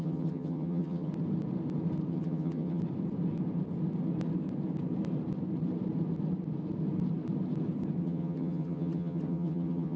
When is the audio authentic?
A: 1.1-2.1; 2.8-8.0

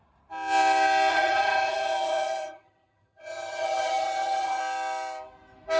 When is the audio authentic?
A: 0.0-1.1; 4.6-5.8

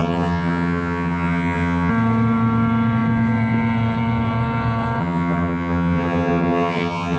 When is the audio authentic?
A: 1.9-5.0

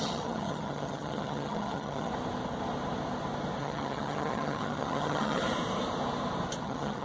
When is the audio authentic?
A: 2.1-3.6; 5.4-6.6

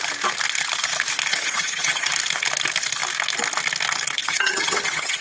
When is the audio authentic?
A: 0.0-1.3; 2.1-4.2

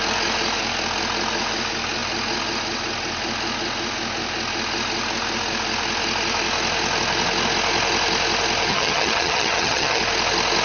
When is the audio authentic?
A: 0.0-8.7; 10.0-10.6